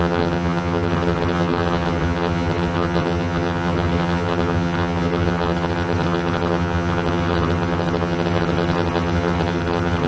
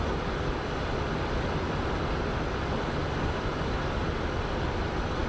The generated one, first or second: first